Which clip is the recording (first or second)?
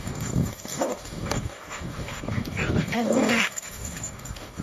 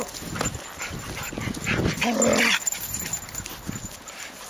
second